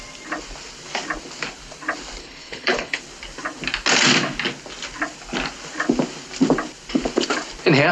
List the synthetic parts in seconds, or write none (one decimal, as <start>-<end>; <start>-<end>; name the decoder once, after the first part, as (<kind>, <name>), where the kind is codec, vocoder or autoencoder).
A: 2.2-3.0 (codec, HILCodec)